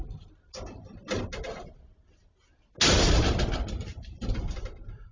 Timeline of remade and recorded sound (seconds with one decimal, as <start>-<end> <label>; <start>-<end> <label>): 0.0-5.1 recorded